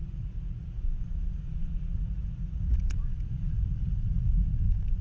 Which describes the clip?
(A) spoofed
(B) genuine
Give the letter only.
A